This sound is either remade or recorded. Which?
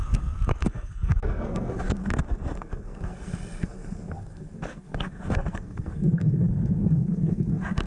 remade